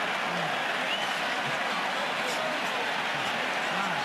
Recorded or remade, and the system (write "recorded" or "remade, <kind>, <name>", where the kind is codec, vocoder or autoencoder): recorded